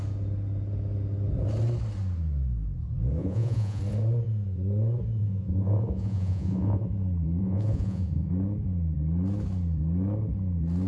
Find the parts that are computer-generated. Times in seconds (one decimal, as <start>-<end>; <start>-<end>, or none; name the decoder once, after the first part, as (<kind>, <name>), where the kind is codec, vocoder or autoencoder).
3.2-3.8 (vocoder, Vocos); 5.2-6.9; 7.4-8.3